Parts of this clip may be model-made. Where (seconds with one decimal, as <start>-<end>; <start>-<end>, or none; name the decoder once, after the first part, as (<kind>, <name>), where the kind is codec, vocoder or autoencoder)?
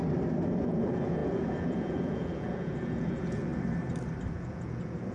0.6-3.5 (vocoder, Vocos); 4.3-5.1